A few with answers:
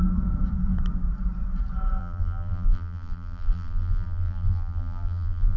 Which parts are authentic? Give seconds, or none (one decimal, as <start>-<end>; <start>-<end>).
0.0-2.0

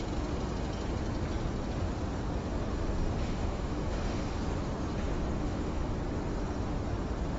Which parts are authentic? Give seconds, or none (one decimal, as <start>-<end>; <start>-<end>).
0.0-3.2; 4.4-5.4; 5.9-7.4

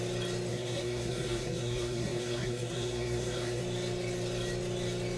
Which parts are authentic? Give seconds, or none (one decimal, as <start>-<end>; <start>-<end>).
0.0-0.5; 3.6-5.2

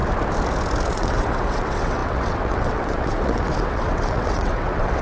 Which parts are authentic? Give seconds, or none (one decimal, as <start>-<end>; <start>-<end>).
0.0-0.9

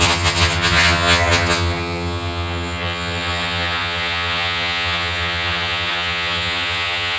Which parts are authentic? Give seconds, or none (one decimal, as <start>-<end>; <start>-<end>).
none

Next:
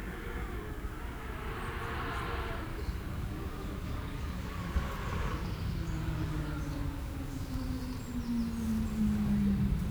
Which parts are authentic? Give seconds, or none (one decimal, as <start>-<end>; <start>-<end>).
1.2-2.7; 7.8-9.9